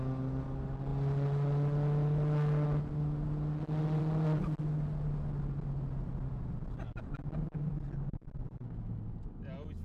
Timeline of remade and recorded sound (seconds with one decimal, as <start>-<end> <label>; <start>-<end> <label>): 0.0-9.8 recorded